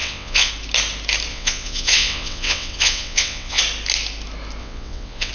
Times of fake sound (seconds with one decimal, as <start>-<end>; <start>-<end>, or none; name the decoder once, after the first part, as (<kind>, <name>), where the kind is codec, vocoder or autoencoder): 0.0-0.5 (vocoder, WaveNeXt); 1.3-3.6; 4.6-5.3